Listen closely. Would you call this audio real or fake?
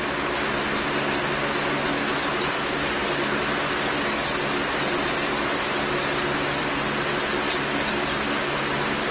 real